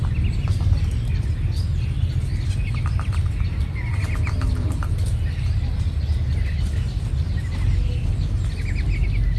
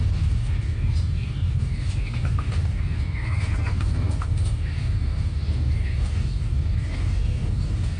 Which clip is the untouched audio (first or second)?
first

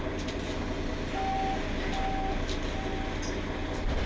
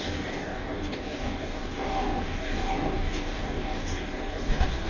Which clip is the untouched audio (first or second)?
first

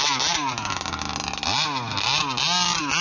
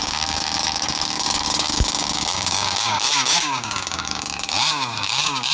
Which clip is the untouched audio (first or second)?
first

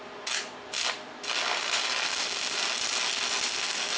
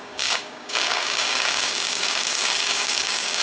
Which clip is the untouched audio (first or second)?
first